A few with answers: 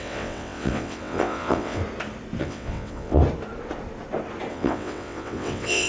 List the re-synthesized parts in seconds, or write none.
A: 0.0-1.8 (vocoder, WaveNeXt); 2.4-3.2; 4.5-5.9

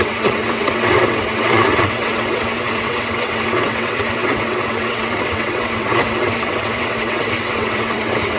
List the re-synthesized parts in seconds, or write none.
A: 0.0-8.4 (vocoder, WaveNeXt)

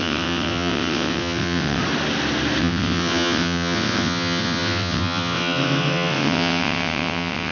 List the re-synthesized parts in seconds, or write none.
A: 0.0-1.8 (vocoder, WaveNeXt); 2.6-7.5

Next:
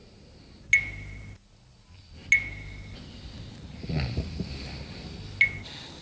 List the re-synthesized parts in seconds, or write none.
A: none

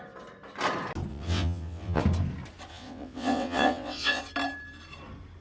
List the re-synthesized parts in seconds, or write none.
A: 1.1-2.0 (vocoder, WaveNeXt); 2.7-4.2

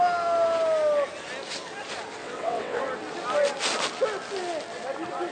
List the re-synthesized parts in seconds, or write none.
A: 2.2-2.8 (vocoder, WaveNeXt)

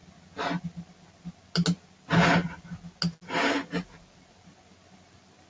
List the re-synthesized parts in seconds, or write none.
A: none

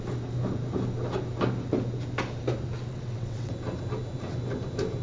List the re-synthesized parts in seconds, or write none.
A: 2.9-3.5 (vocoder, WaveNeXt)